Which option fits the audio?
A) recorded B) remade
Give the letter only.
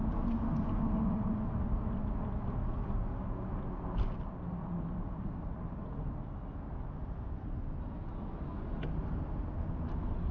A